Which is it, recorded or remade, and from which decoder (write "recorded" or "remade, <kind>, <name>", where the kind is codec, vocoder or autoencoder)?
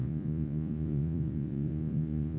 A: remade, vocoder, Vocos